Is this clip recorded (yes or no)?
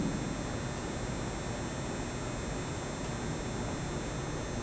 yes